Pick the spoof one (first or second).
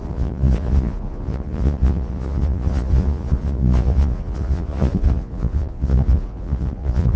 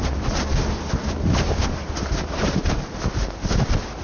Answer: first